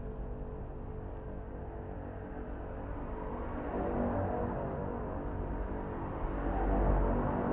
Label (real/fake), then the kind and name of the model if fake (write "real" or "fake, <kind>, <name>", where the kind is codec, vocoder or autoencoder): real